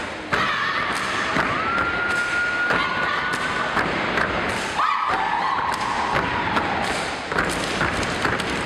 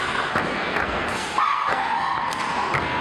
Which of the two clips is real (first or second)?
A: first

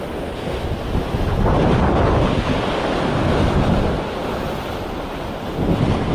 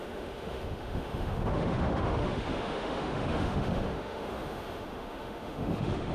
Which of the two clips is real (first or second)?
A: first